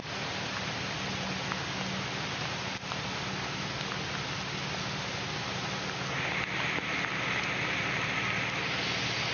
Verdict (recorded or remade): recorded